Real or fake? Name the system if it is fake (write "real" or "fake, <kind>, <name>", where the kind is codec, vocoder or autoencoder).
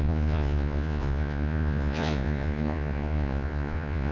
fake, vocoder, Vocos